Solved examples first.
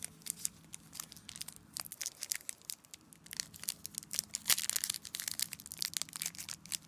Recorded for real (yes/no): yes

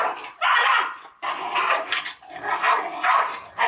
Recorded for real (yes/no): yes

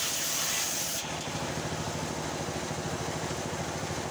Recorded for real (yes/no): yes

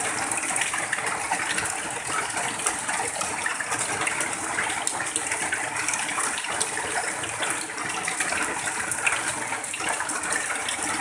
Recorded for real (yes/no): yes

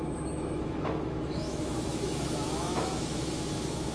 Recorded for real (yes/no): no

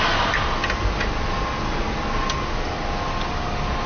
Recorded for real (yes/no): yes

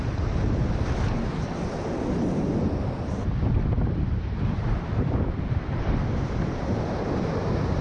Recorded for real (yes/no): yes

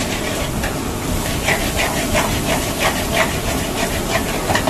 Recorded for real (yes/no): no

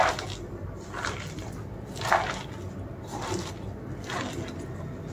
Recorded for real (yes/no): yes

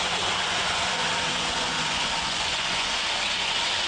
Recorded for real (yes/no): no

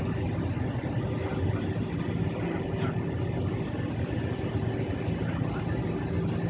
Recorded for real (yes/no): yes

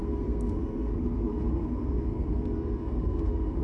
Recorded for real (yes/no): no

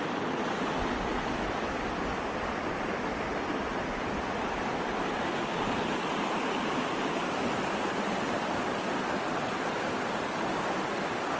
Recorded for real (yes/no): yes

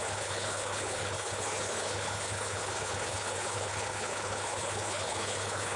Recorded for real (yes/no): no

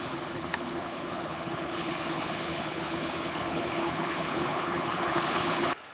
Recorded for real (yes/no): no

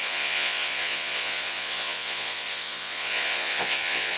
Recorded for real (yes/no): no